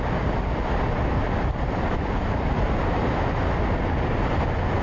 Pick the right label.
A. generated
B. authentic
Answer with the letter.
B